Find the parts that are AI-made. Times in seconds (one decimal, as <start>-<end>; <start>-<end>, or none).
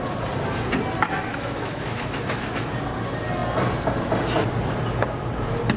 1.3-2.7